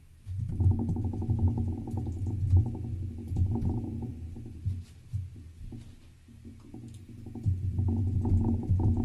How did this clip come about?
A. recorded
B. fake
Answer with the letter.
A